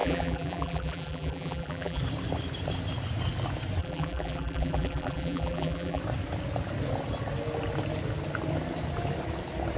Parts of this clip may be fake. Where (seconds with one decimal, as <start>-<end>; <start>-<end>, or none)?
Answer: 0.0-2.0; 3.8-6.0